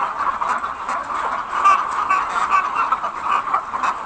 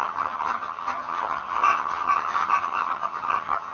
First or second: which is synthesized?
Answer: second